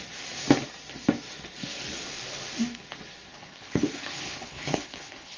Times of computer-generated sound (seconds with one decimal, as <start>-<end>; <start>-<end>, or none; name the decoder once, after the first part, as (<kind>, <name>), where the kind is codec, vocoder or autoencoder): 3.3-5.4 (codec, HILCodec)